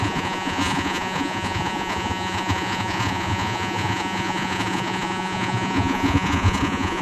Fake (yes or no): yes